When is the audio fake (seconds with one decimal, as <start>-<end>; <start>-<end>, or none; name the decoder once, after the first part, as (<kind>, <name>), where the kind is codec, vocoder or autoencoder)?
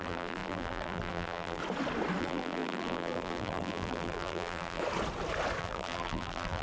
0.0-1.6 (vocoder, BigVGAN v2); 2.2-4.8; 5.6-6.6